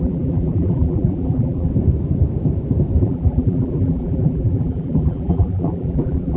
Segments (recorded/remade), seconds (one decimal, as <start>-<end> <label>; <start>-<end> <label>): 0.0-1.7 remade; 1.7-3.0 recorded; 3.0-6.4 remade